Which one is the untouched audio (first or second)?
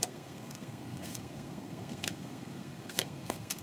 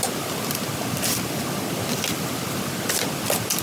second